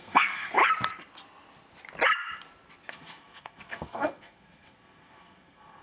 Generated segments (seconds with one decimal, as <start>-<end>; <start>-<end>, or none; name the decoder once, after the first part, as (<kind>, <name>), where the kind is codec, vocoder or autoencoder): 0.0-0.6 (codec, SNAC); 2.9-5.8